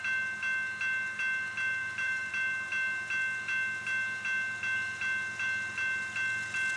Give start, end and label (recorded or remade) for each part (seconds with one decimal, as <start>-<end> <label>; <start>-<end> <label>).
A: 0.0-1.8 recorded; 1.8-2.3 remade; 2.3-6.8 recorded